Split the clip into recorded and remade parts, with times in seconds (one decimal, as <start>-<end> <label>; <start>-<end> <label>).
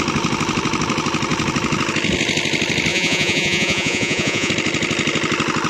0.0-2.9 recorded; 2.9-4.5 remade; 4.5-5.7 recorded